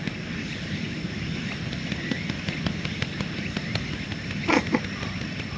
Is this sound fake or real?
fake